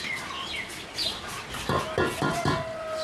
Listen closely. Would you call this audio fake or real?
real